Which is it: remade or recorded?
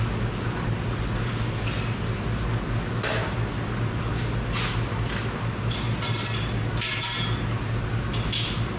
recorded